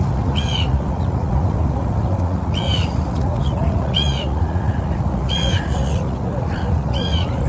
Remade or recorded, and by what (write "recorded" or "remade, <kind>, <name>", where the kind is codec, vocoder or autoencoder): remade, vocoder, Vocos